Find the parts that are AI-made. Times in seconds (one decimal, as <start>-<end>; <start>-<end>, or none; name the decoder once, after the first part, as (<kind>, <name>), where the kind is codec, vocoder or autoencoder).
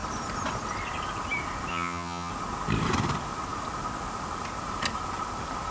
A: 1.7-2.3 (vocoder, HiFi-GAN)